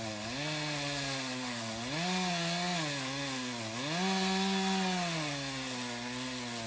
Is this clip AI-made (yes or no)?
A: no